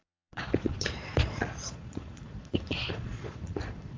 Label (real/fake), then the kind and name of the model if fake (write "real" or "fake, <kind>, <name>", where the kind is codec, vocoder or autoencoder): fake, vocoder, Vocos